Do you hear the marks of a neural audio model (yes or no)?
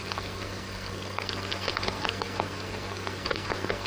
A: yes